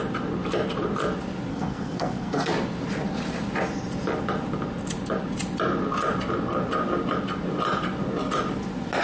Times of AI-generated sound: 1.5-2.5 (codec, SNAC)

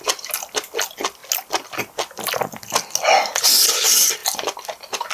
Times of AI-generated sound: none

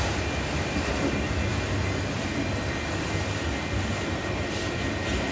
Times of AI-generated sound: none

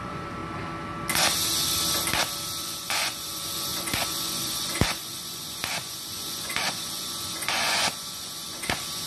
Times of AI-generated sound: 0.0-0.4 (vocoder, Vocos); 2.6-9.1